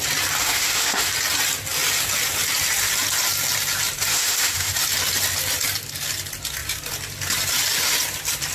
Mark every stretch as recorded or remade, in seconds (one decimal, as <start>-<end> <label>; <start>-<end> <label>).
0.0-0.4 recorded; 0.4-1.1 remade; 1.1-4.1 recorded; 4.1-4.7 remade; 4.7-8.5 recorded